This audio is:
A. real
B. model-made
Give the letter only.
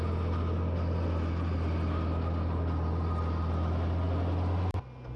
A